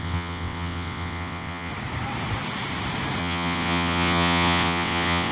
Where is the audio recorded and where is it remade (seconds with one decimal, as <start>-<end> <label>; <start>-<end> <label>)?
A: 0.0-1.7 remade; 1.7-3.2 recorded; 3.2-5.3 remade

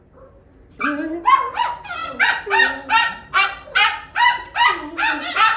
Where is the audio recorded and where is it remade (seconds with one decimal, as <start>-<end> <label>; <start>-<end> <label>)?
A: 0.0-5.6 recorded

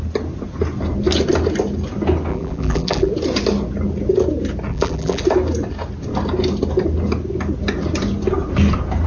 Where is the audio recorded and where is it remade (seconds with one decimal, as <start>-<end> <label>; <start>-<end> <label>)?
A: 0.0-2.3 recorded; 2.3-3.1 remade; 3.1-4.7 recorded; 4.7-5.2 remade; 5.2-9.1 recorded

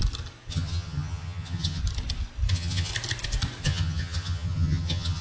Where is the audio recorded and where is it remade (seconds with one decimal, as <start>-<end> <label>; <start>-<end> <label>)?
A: 0.0-0.5 recorded; 0.5-1.8 remade; 1.8-2.5 recorded; 2.5-2.9 remade; 2.9-3.6 recorded; 3.6-5.2 remade

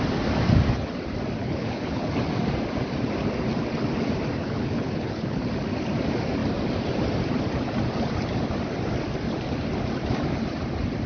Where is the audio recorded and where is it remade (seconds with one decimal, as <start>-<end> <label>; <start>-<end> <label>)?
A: 0.0-1.4 recorded; 1.4-2.1 remade; 2.1-4.4 recorded; 4.4-5.4 remade; 5.4-11.1 recorded